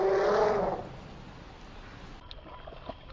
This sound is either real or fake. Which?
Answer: real